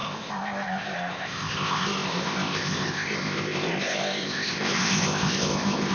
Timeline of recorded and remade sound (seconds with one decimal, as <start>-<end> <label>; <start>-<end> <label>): 0.0-5.9 remade